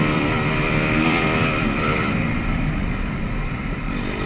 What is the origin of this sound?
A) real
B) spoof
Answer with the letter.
B